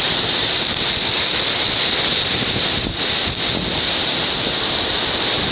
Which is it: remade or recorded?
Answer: recorded